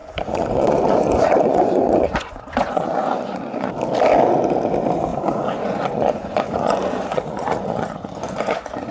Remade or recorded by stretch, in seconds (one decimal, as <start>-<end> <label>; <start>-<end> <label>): 0.0-3.7 remade; 3.7-5.1 recorded; 5.1-8.9 remade